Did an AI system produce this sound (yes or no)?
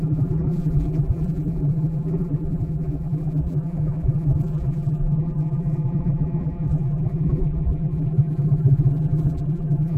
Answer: yes